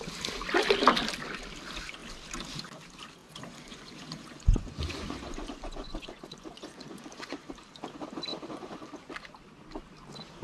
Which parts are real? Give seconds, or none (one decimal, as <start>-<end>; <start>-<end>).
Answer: 0.0-3.2; 7.5-8.3; 9.1-10.4